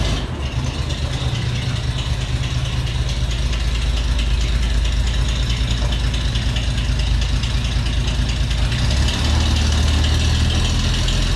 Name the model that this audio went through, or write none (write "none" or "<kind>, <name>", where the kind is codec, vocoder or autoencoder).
none